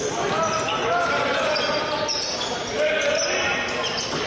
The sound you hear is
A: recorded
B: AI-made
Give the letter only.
A